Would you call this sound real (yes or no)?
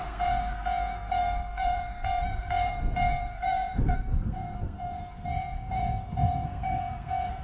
no